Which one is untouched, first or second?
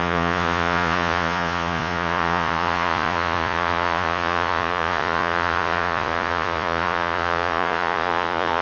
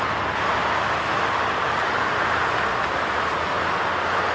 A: second